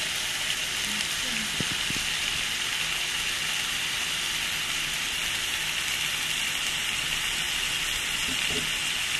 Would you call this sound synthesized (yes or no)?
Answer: no